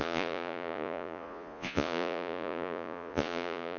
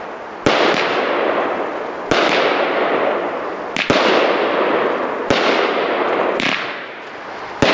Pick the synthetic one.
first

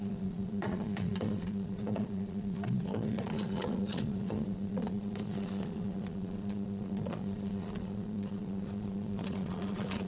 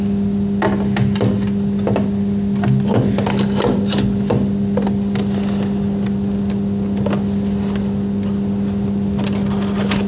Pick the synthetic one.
first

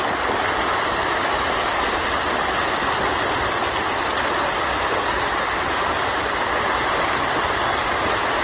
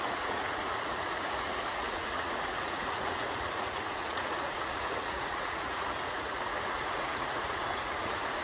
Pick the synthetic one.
second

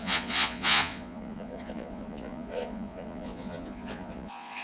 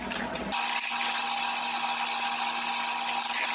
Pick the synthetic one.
first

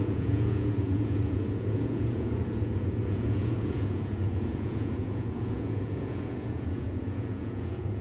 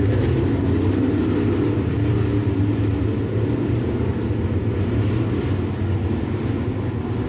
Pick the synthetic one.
first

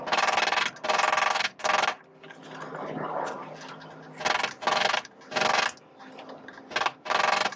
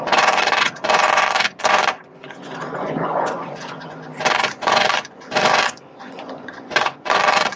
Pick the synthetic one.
second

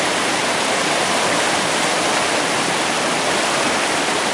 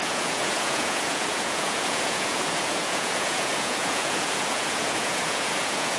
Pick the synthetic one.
second